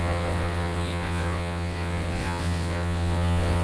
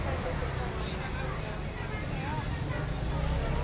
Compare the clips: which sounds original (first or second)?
second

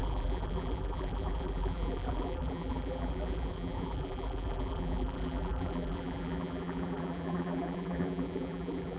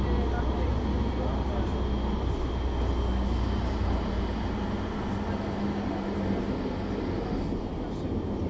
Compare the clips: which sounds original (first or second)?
second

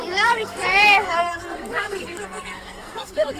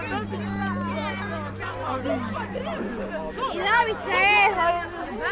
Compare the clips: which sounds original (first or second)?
second